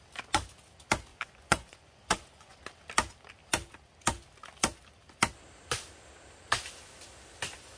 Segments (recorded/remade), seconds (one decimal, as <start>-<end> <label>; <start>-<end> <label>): 0.0-1.1 recorded; 1.1-2.6 remade; 2.6-7.8 recorded

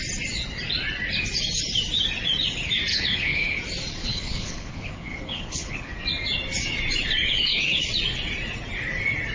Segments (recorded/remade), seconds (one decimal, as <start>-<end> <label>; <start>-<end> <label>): 0.0-2.9 recorded; 2.9-3.6 remade; 3.6-4.0 recorded; 4.0-5.9 remade; 5.9-7.2 recorded; 7.2-7.9 remade; 7.9-9.3 recorded

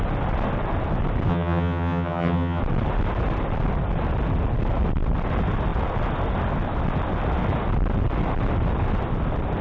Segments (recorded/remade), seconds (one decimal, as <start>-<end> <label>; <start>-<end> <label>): 0.0-1.3 recorded; 1.3-2.6 remade; 2.6-9.6 recorded

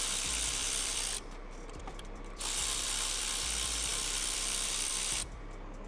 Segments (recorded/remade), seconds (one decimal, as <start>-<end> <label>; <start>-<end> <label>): 0.0-0.6 recorded; 0.6-3.3 remade; 3.3-3.9 recorded; 3.9-4.9 remade; 4.9-5.9 recorded

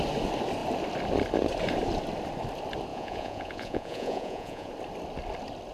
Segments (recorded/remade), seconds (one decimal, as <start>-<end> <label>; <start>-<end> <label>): 0.0-2.9 recorded; 2.9-4.7 remade; 4.7-5.7 recorded

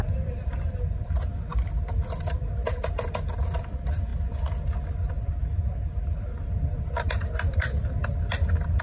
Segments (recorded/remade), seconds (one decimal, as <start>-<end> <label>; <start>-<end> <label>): 0.0-8.8 recorded

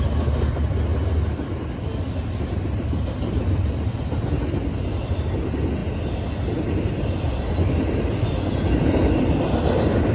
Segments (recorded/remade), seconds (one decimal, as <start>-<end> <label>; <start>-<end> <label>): 0.0-10.1 recorded